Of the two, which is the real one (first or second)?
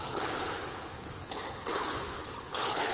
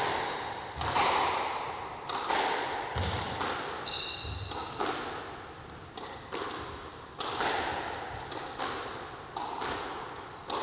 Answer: second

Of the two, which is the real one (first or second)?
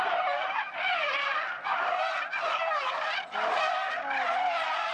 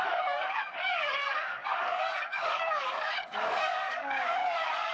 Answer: first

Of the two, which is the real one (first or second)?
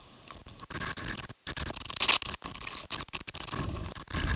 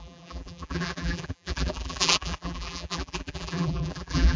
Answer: first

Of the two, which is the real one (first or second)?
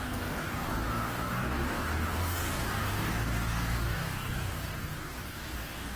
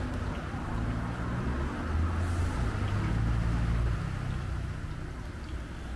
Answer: second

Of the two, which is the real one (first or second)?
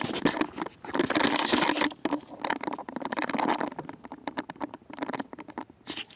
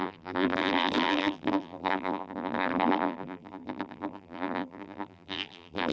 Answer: first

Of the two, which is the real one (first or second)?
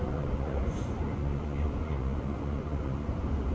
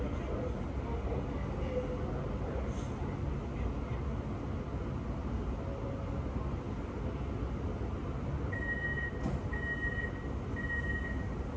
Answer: second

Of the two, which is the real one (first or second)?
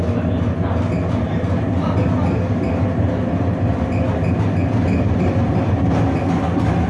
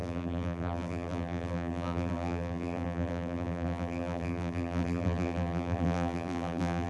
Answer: first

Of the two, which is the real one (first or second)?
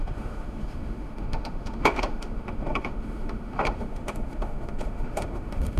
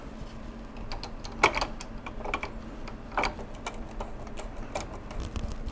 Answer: second